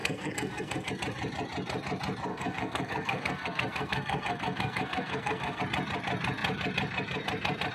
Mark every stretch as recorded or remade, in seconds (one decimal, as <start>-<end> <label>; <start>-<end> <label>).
0.0-0.9 remade; 0.9-2.3 recorded; 2.3-5.6 remade; 5.6-7.7 recorded